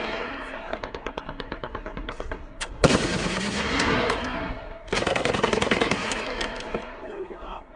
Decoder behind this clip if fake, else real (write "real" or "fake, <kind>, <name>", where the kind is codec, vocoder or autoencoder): fake, codec, SNAC